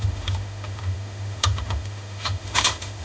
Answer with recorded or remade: remade